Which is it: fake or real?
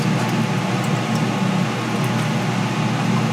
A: real